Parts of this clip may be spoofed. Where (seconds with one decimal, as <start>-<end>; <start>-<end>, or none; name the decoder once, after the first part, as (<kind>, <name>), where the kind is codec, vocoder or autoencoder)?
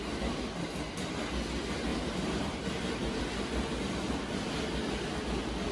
1.9-3.2 (vocoder, BigVGAN v2)